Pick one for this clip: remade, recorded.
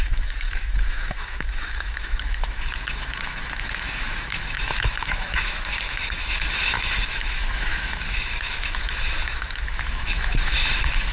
remade